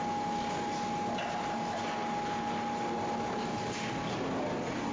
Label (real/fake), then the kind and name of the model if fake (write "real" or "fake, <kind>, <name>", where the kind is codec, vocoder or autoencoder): real